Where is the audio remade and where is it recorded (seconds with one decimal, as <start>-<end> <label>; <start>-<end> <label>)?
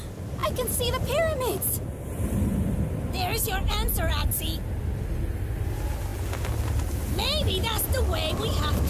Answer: 0.0-8.9 recorded